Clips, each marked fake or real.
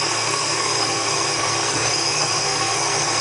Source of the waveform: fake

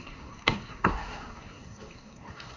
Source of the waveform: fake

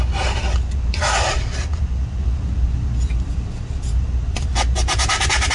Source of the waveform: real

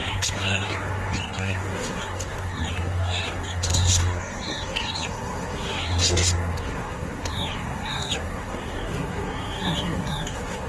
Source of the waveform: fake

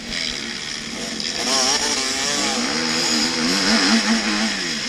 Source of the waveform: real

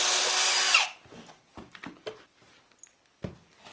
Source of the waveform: real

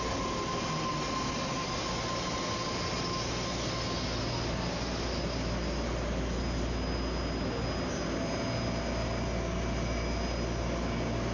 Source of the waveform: real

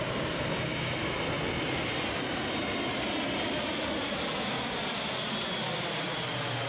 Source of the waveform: real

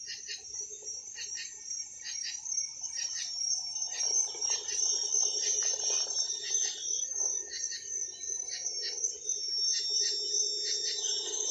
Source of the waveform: real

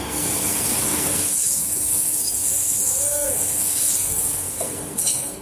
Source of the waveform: fake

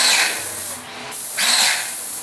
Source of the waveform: real